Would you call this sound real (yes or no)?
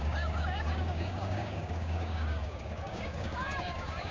no